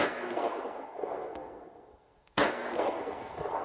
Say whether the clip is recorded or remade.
remade